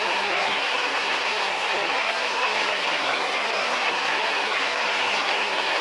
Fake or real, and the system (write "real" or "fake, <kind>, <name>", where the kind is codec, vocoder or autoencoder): fake, codec, SNAC